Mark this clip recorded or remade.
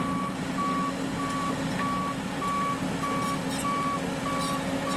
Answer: recorded